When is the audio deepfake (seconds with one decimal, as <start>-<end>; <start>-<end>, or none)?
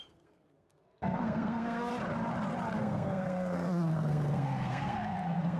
0.0-1.9; 2.8-5.6